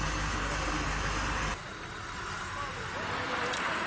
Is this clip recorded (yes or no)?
yes